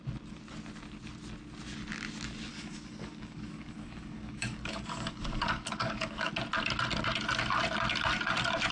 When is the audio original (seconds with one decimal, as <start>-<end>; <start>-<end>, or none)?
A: 0.0-2.5; 6.3-8.7